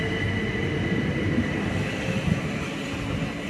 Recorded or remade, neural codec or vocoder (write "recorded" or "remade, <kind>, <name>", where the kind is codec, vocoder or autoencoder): recorded